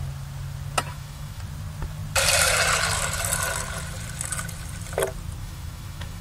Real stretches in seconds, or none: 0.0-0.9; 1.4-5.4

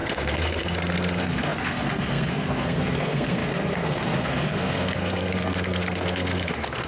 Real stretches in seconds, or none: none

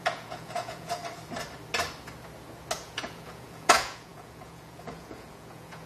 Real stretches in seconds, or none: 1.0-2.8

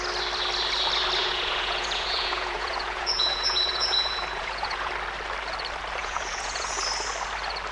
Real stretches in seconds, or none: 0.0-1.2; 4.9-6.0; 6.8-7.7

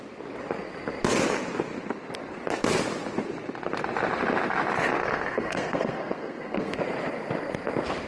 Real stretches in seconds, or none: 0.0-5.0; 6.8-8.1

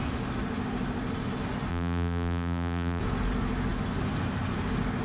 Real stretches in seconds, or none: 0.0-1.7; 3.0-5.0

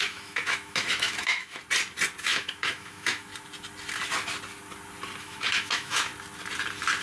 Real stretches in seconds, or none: 1.6-2.2; 3.3-5.2; 6.1-7.0

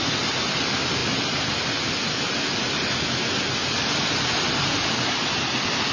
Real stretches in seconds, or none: 0.0-5.9